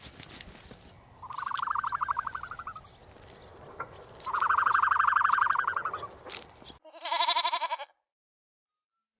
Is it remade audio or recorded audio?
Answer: recorded